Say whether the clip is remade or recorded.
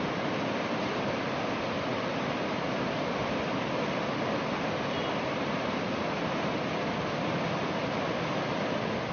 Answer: recorded